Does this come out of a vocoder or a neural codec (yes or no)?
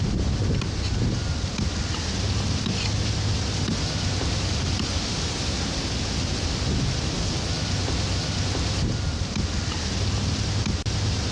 no